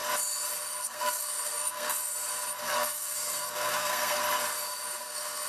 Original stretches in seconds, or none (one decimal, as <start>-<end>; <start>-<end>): 0.0-0.8; 2.1-2.6; 4.2-5.0